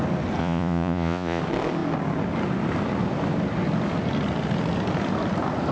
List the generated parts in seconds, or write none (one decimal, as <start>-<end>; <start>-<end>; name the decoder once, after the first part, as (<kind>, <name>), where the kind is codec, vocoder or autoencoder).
0.4-1.4 (vocoder, Vocos)